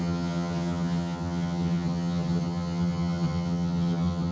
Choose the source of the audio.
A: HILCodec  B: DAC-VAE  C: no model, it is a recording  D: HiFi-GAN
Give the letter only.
D